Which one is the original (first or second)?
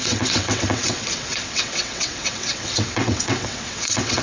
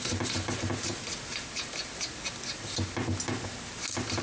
second